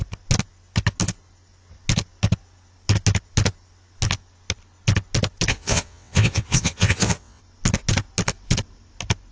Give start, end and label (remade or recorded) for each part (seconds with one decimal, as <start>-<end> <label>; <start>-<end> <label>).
0.0-5.5 recorded; 5.5-7.4 remade; 7.4-9.3 recorded